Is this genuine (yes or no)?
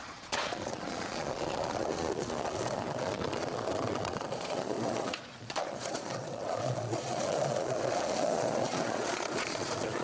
no